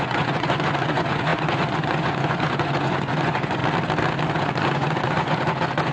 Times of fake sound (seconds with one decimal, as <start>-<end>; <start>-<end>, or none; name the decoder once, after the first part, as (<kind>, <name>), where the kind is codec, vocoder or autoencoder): 0.0-3.6 (vocoder, Vocos); 4.3-5.9